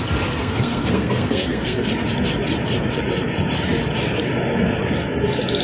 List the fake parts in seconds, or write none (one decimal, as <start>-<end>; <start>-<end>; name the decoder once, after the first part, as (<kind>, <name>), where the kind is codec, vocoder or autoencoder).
0.4-1.9 (codec, SNAC)